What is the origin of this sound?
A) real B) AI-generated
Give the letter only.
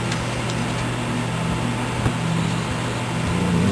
A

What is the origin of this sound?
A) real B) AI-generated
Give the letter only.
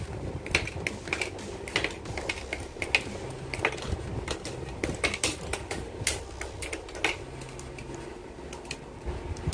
A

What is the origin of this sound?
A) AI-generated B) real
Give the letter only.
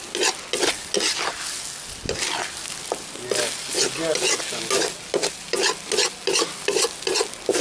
B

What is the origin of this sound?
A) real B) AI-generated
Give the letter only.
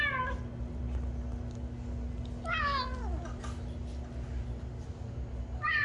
A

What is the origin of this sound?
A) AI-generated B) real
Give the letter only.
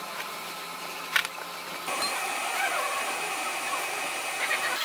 B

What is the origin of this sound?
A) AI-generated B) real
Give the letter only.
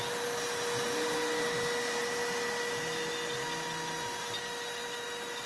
B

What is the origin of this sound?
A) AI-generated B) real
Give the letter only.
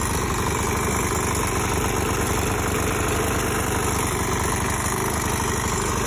B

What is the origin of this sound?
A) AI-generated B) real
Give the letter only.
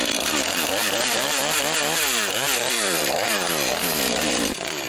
A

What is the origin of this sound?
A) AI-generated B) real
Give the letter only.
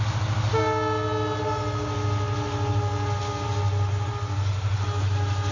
B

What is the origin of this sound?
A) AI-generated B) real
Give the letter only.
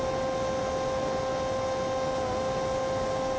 B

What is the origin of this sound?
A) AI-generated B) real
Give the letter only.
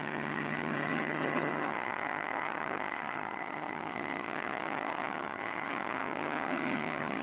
A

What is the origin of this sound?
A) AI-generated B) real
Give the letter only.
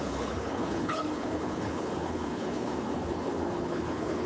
A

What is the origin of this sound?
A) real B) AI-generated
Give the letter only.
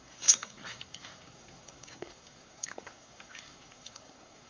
B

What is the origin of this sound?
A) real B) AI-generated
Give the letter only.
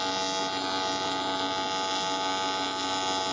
A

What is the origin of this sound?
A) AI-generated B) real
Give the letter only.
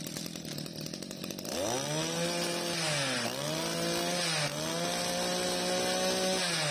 B